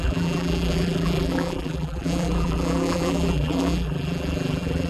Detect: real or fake fake